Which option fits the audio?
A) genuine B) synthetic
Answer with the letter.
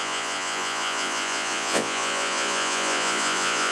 B